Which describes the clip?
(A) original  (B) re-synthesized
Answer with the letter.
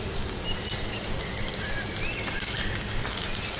A